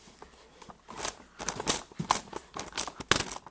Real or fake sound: real